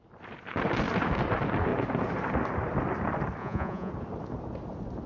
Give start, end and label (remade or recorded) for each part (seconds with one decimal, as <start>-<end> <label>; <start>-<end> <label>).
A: 0.0-3.4 recorded; 3.4-3.9 remade; 3.9-5.1 recorded